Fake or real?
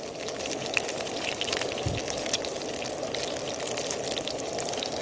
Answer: real